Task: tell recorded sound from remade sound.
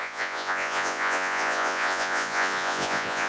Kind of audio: remade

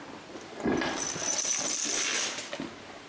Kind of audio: recorded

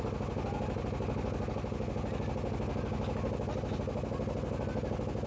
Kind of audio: recorded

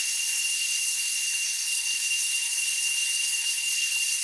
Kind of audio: remade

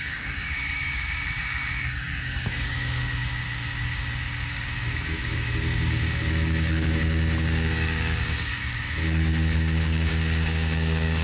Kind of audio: remade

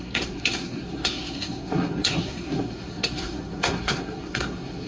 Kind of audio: remade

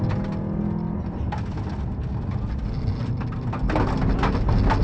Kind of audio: recorded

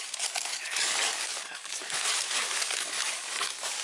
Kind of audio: remade